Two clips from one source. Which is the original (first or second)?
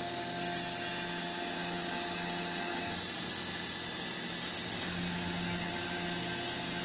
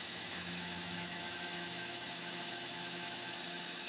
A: first